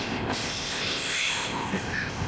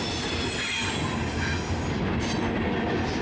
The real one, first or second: second